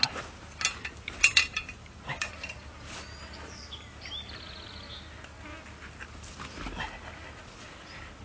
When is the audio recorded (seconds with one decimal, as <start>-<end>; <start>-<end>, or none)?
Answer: 0.0-1.3; 2.3-8.2